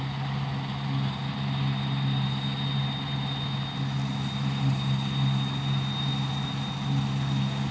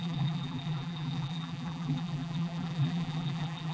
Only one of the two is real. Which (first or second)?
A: first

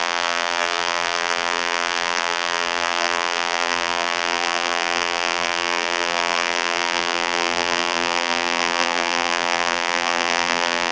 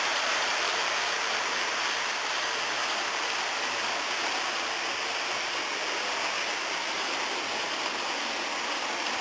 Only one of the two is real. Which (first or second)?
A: second